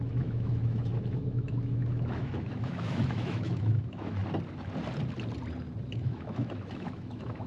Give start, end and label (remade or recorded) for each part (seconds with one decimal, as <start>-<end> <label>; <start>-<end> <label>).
0.0-4.2 remade; 4.2-5.9 recorded; 5.9-7.5 remade